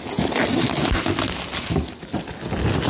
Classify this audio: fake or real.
real